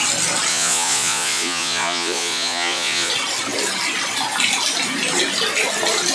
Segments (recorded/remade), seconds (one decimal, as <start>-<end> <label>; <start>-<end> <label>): 0.0-0.5 recorded; 0.5-3.1 remade; 3.1-6.1 recorded